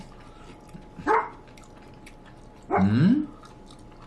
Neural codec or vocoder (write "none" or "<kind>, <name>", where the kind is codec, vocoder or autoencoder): none